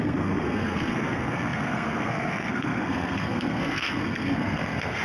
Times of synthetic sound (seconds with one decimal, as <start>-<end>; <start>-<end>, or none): 0.0-5.0